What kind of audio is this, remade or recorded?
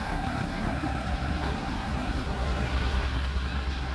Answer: remade